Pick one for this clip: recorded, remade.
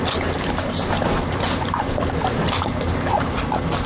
recorded